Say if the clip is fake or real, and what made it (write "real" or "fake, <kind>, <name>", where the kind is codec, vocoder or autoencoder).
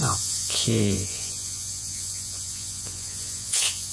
fake, vocoder, Vocos